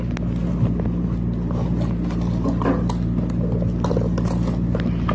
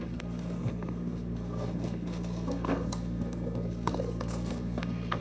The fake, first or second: second